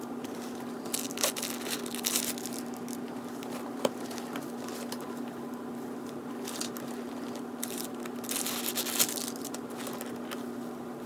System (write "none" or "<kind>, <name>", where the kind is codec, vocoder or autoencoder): none